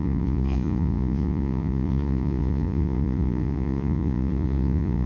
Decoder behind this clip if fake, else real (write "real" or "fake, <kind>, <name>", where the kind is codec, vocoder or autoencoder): fake, vocoder, Vocos